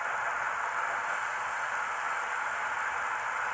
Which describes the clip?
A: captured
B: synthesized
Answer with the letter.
A